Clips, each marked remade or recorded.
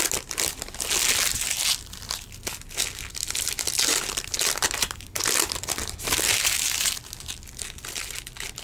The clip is recorded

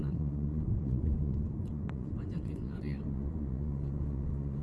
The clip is remade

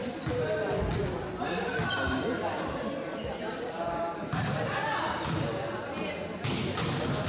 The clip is recorded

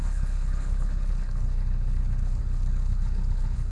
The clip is remade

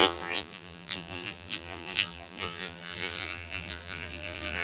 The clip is remade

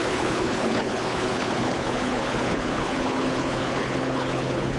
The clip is remade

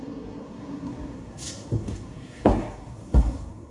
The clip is remade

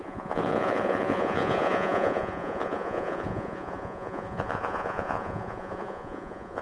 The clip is remade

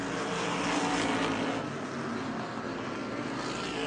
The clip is recorded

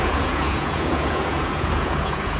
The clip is remade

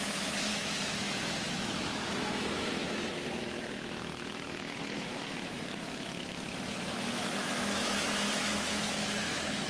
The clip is remade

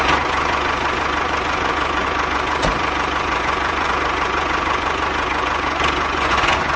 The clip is remade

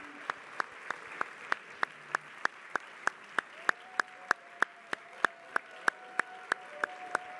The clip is recorded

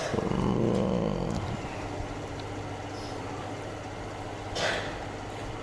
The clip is recorded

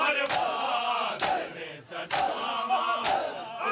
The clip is recorded